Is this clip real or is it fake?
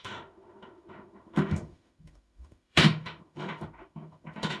fake